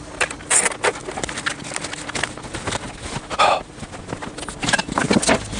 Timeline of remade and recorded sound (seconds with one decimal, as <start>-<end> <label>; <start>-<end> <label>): 0.0-5.6 recorded